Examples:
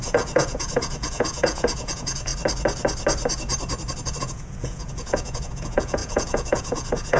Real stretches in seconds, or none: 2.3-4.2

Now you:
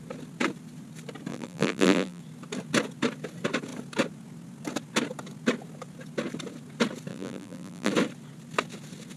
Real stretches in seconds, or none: 0.0-1.3; 2.2-7.1; 7.9-9.2